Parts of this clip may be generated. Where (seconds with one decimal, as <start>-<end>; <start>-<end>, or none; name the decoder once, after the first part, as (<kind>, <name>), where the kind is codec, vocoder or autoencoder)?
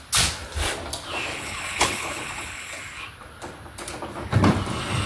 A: 1.3-2.8 (codec, HILCodec)